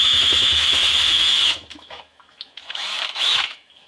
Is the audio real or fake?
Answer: fake